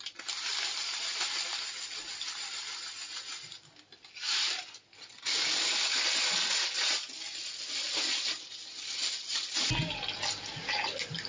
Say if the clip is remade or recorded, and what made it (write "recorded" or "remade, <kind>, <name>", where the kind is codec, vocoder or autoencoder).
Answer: recorded